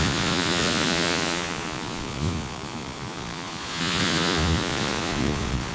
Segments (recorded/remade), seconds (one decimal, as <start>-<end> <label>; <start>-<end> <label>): 0.0-5.7 remade